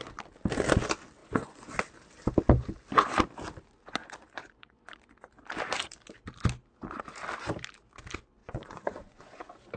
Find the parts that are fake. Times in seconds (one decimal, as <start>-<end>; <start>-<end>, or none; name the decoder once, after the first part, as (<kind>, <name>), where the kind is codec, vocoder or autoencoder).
1.2-1.7 (vocoder, Vocos); 4.0-4.9; 8.4-9.4